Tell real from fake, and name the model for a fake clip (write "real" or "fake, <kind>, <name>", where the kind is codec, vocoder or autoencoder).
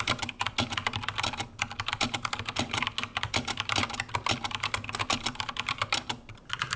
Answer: real